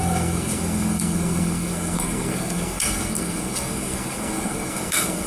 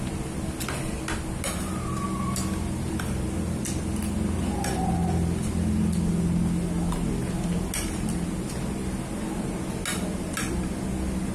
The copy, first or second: first